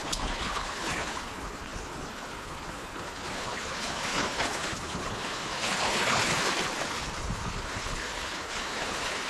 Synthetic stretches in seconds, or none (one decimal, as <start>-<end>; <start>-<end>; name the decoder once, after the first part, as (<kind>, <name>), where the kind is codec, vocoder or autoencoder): 0.0-6.3 (codec, HILCodec); 7.2-9.3